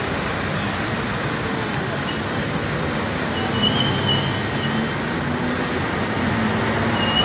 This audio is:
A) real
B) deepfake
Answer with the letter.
A